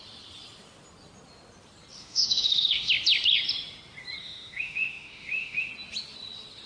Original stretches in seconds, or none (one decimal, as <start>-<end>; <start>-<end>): 0.0-2.0; 2.9-4.2; 5.7-6.7